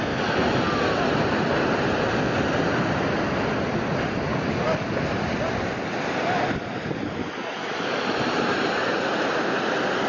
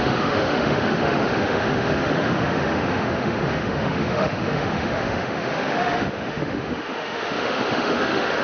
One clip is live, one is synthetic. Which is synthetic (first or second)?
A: second